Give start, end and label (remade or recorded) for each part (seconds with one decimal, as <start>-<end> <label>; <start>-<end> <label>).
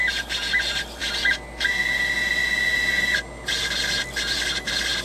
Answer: 0.0-5.0 recorded